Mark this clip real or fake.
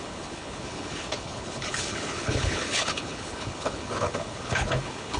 fake